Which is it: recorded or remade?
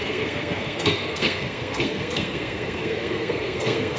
remade